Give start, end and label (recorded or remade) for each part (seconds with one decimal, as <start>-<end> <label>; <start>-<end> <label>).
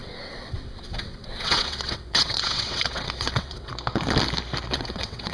0.0-3.7 remade; 3.7-4.7 recorded; 4.7-5.3 remade